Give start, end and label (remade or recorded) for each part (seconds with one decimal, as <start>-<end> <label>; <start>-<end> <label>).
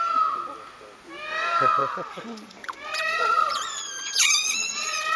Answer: 0.0-1.8 recorded; 1.8-5.2 remade